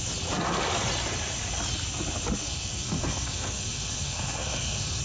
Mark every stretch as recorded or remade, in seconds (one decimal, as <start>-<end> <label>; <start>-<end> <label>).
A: 0.0-2.4 recorded; 2.4-5.0 remade